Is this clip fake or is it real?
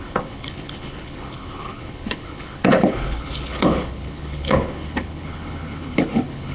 fake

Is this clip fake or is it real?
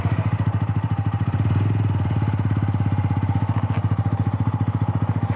real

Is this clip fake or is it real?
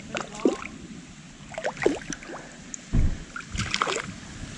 real